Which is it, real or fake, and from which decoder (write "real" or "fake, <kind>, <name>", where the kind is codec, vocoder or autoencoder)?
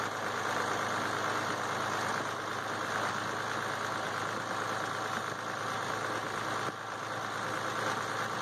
real